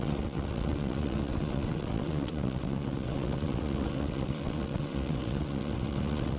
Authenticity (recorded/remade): remade